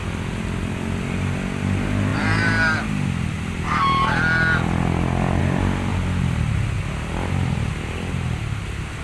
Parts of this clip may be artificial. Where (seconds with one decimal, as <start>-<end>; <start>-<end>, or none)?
none

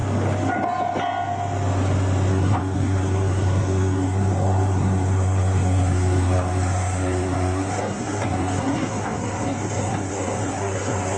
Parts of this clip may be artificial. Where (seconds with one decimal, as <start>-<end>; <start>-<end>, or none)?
2.3-11.2